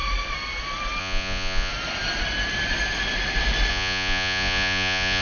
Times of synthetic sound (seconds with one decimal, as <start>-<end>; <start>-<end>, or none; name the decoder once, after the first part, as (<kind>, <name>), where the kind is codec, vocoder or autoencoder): 1.0-1.7 (vocoder, Vocos); 3.7-5.2